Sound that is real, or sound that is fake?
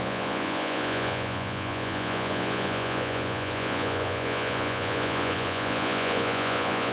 fake